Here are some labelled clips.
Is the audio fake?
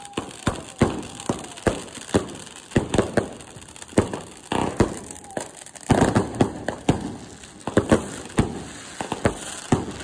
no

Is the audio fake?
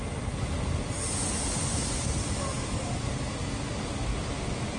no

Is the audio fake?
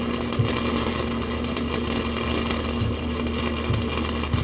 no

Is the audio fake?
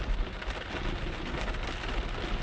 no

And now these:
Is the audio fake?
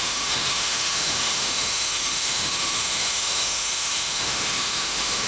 yes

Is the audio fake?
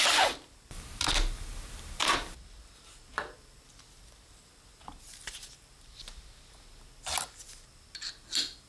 no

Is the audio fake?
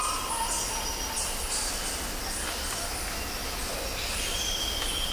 no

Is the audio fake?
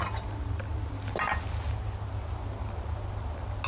no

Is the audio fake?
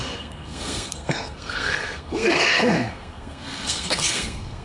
yes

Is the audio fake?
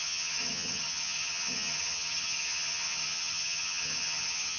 yes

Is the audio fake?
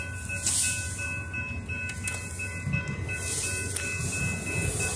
no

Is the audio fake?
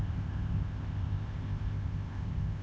yes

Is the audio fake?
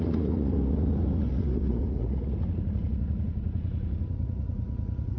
yes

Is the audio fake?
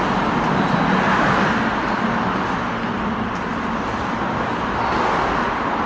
no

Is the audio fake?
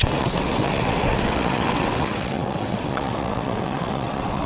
yes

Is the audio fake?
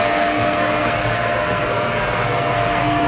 yes